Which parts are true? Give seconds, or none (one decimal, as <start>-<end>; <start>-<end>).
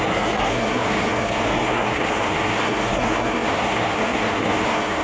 none